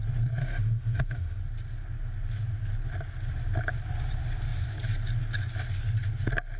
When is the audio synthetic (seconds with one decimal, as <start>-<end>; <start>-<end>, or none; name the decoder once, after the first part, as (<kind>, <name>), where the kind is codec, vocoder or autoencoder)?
0.4-1.4 (autoencoder, DAC-VAE)